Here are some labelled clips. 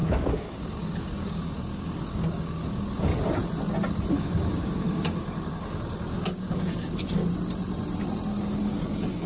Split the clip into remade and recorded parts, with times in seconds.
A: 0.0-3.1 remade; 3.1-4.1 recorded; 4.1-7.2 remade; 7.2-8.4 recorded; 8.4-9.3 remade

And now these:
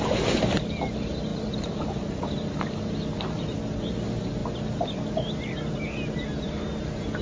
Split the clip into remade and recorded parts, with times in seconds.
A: 0.0-7.2 recorded

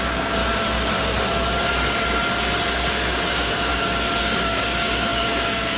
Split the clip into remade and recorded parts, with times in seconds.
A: 0.0-0.4 remade; 0.4-2.9 recorded; 2.9-3.7 remade; 3.7-4.2 recorded; 4.2-5.8 remade

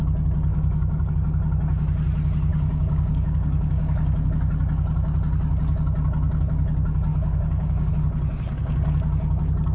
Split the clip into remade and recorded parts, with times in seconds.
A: 0.0-0.5 recorded; 0.5-1.1 remade; 1.1-2.5 recorded; 2.5-4.3 remade; 4.3-7.1 recorded; 7.1-7.9 remade; 7.9-9.7 recorded